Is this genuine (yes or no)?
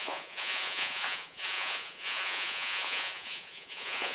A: no